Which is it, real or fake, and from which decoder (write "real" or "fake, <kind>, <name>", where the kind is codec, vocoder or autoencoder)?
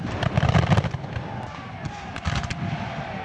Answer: real